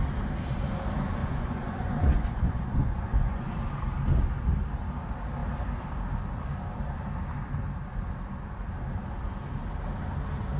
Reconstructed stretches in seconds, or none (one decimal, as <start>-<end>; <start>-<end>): 1.2-3.5